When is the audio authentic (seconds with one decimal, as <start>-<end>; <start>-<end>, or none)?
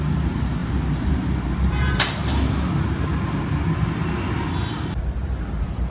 2.2-4.7